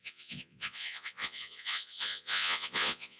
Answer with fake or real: fake